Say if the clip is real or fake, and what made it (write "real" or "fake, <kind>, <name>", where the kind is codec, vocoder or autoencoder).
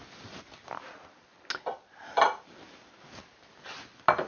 real